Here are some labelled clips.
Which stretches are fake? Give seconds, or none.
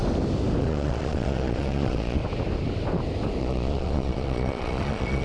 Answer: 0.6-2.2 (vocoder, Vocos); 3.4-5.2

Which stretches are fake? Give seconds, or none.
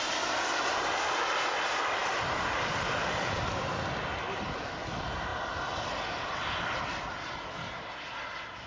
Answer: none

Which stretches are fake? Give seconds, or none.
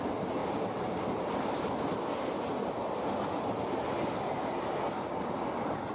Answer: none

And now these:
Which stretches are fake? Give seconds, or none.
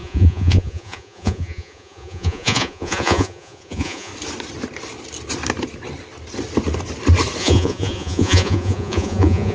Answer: 0.0-4.1 (vocoder, Vocos); 7.4-9.5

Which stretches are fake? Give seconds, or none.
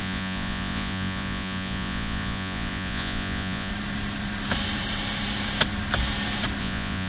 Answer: 0.0-3.7 (vocoder, Vocos); 6.6-7.1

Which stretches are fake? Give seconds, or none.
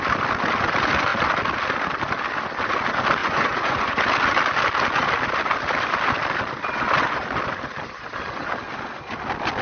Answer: 3.2-4.0 (vocoder, Vocos)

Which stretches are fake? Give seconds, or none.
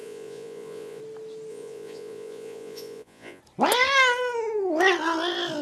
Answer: 0.0-1.0 (vocoder, Vocos); 1.5-3.4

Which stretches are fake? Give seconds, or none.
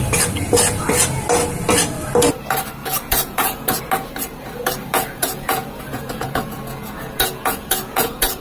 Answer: 2.8-3.8 (vocoder, Vocos); 4.9-8.4